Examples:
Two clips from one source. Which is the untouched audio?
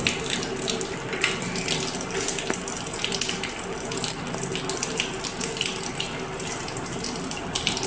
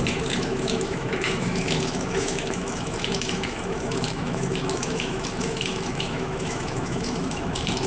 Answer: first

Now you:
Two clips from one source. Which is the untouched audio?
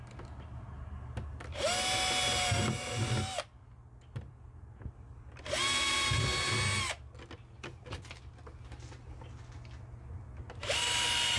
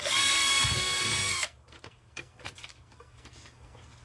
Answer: first